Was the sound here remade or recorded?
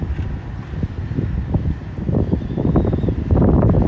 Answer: recorded